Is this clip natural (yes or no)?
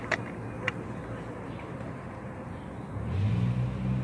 yes